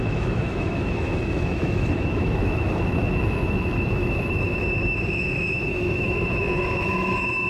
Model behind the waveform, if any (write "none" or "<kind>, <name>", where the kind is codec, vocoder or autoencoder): autoencoder, DAC-VAE